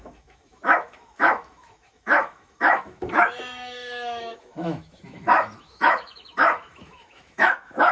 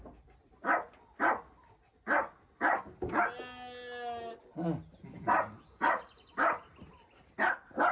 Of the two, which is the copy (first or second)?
first